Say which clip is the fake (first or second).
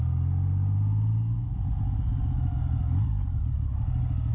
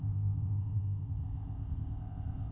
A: second